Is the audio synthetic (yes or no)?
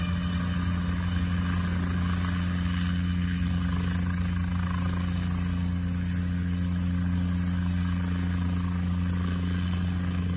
no